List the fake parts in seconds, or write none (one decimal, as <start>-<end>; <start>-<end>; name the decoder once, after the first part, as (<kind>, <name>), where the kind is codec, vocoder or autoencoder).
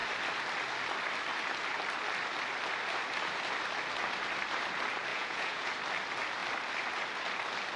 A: 5.1-5.7 (vocoder, Vocos)